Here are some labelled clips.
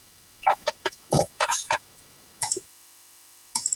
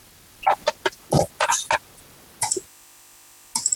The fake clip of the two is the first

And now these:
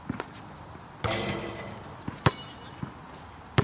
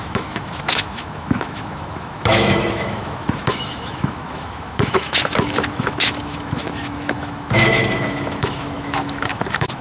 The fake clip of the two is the second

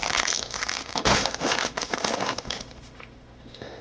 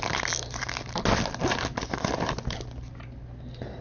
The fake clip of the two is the first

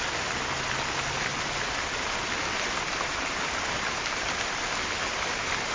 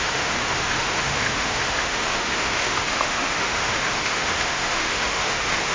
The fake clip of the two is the second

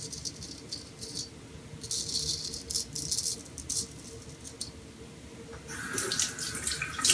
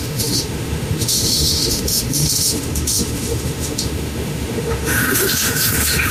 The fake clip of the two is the second